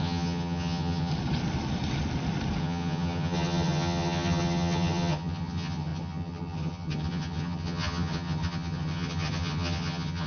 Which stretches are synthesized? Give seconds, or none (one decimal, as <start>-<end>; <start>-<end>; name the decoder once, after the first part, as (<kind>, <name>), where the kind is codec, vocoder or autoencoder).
0.0-1.1 (vocoder, HiFi-GAN); 2.6-10.3

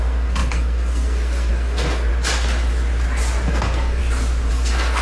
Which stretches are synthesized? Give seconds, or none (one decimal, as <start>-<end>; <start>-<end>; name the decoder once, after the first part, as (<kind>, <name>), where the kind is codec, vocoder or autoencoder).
0.0-2.1 (codec, SNAC); 3.5-4.0; 4.5-5.0

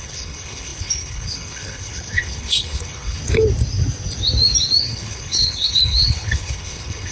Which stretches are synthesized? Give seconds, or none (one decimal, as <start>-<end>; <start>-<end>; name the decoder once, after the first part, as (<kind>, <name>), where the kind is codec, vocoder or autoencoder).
0.0-3.2 (codec, HILCodec); 4.8-7.1

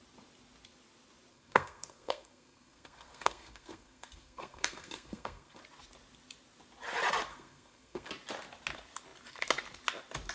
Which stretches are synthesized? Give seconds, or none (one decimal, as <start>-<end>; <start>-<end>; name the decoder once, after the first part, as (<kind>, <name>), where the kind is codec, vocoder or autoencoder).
1.3-5.6 (codec, SNAC); 7.3-8.1